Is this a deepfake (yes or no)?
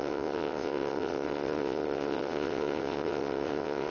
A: yes